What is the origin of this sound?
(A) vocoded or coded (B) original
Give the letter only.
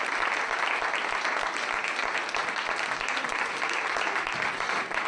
B